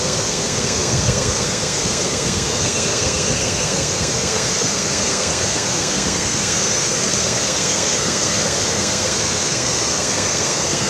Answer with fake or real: fake